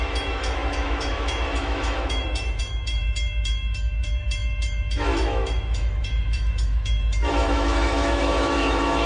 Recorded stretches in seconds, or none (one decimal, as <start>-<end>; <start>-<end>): none